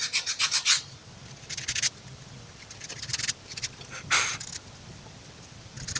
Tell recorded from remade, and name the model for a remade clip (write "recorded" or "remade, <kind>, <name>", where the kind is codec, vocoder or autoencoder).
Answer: recorded